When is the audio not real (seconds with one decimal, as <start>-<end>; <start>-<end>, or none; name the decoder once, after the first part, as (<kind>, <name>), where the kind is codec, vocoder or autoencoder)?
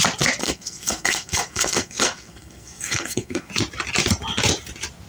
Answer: 0.4-3.5 (codec, SNAC)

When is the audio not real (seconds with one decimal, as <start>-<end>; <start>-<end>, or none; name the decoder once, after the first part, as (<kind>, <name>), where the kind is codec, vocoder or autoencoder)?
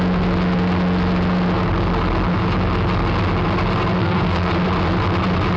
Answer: 4.0-4.5 (codec, SNAC)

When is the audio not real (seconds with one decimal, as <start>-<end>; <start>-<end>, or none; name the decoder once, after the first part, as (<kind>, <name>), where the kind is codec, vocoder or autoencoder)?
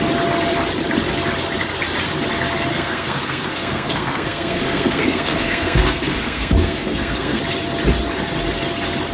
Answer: 2.7-7.4 (codec, SNAC)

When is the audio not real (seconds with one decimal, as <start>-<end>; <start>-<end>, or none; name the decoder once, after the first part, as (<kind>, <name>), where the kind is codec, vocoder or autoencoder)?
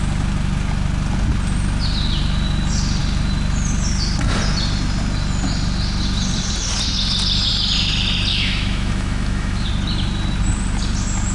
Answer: 8.3-9.7 (autoencoder, DAC-VAE)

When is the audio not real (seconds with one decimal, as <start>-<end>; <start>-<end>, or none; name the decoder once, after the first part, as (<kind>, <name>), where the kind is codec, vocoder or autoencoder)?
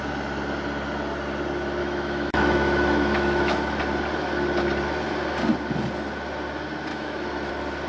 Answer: 1.8-3.8 (autoencoder, DAC-VAE); 6.9-7.5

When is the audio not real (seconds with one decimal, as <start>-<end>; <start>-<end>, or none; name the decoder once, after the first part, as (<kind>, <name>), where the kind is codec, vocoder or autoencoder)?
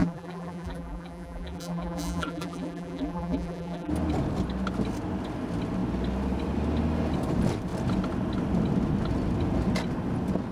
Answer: 0.0-3.9 (vocoder, BigVGAN v2)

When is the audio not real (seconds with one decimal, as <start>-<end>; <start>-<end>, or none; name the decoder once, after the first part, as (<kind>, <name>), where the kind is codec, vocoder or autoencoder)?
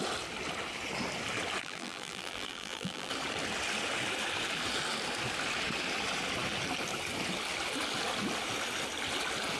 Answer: 1.6-3.1 (vocoder, BigVGAN v2)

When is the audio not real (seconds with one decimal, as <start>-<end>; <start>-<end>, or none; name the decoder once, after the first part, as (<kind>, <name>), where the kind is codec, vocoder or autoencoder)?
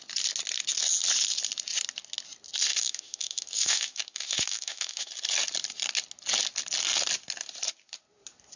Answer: 2.7-5.1 (autoencoder, DAC-VAE)